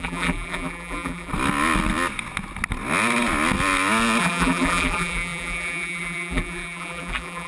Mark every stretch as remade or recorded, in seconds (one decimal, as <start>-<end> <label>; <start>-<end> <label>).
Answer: 0.0-1.3 remade; 1.3-4.2 recorded; 4.2-7.5 remade